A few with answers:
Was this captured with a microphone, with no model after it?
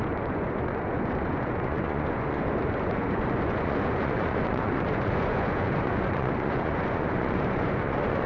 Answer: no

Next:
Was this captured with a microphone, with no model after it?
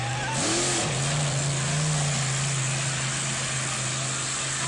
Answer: yes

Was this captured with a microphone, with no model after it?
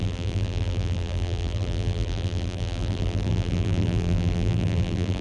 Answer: no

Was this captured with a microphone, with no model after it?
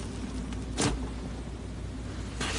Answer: yes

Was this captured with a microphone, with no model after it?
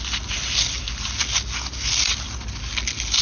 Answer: yes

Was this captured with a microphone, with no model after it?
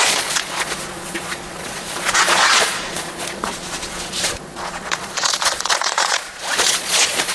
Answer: no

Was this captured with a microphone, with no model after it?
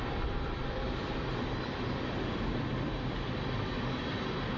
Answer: no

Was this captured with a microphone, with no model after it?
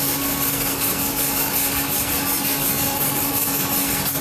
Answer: no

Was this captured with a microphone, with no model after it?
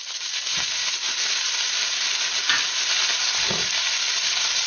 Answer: yes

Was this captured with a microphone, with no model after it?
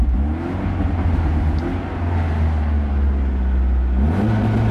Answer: yes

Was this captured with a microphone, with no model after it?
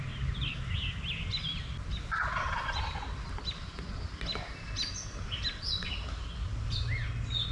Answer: yes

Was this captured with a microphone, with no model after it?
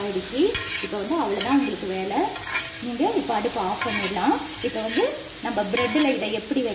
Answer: yes